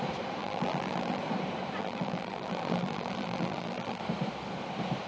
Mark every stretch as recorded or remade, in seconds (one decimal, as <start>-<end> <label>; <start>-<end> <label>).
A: 0.0-0.4 recorded; 0.4-1.2 remade; 1.2-1.8 recorded; 1.8-4.0 remade; 4.0-5.1 recorded